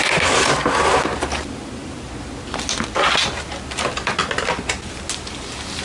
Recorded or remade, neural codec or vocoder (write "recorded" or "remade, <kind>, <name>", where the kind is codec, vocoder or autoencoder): recorded